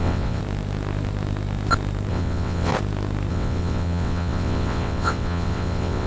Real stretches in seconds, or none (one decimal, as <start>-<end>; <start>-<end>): 0.4-2.1; 2.7-3.3